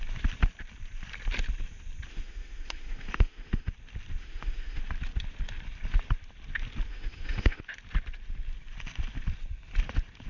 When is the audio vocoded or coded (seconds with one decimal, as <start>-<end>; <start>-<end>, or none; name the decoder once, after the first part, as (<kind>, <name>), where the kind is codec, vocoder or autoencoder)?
2.1-3.7 (autoencoder, DAC-VAE); 4.2-4.8; 6.9-7.6